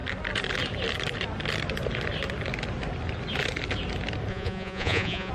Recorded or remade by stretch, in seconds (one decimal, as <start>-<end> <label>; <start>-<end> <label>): 0.0-4.3 recorded; 4.3-5.3 remade